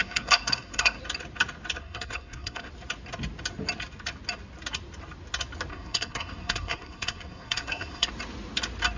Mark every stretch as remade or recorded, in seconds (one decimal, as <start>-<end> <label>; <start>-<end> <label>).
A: 0.0-1.0 remade; 1.0-1.8 recorded; 1.8-2.7 remade; 2.7-5.7 recorded; 5.7-8.1 remade; 8.1-9.0 recorded